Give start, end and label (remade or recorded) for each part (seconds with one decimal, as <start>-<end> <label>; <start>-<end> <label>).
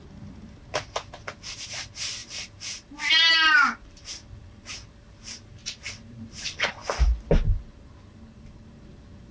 0.0-2.2 recorded; 2.2-6.7 remade; 6.7-9.3 recorded